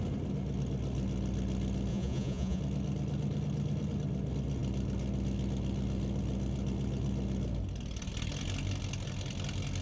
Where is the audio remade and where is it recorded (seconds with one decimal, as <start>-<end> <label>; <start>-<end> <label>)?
0.0-1.9 recorded; 1.9-2.6 remade; 2.6-9.8 recorded